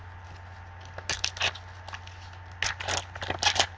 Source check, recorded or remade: recorded